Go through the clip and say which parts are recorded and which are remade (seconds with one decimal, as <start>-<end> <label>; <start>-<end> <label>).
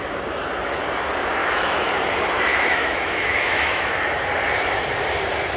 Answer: 0.0-1.4 recorded; 1.4-1.9 remade; 1.9-2.5 recorded; 2.5-3.9 remade; 3.9-5.6 recorded